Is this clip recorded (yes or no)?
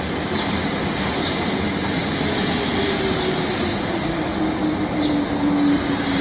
yes